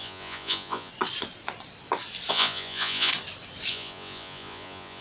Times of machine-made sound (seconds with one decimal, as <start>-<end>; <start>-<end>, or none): 0.0-0.9; 2.3-3.1; 3.7-5.0